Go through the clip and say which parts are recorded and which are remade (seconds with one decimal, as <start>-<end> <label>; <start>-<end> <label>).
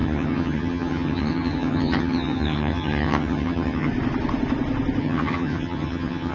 0.0-3.9 remade; 3.9-5.0 recorded; 5.0-6.3 remade